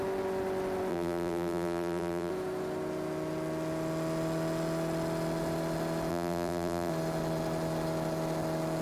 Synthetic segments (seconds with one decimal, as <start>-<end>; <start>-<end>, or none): 0.9-2.3; 6.1-6.9